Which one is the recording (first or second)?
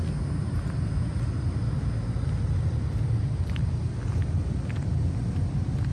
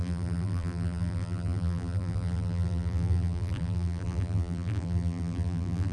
first